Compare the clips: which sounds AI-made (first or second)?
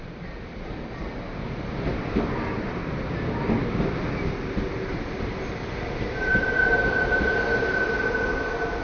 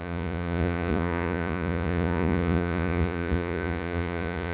second